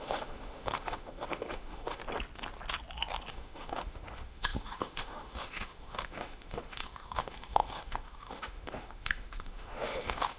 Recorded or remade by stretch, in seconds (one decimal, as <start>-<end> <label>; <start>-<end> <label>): 0.0-2.0 remade; 2.0-3.3 recorded; 3.3-10.4 remade